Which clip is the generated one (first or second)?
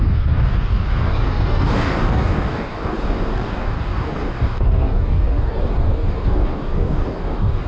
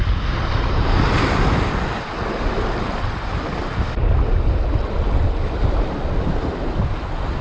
first